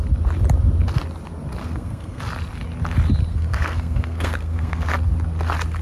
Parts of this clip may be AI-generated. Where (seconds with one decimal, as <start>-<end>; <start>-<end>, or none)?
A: 1.6-2.2; 3.3-4.9